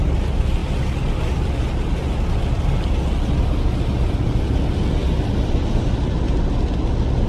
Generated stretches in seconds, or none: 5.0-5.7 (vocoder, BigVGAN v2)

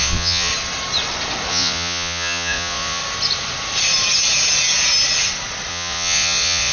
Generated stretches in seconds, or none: 0.0-0.5 (vocoder, Vocos); 1.5-3.0; 5.7-6.7

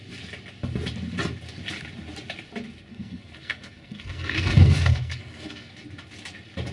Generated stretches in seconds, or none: 2.9-5.7 (codec, SNAC)